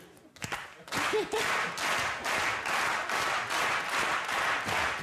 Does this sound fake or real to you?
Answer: real